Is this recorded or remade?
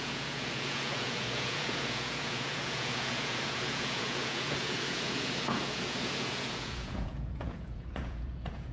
remade